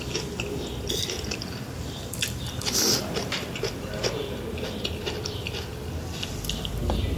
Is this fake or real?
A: fake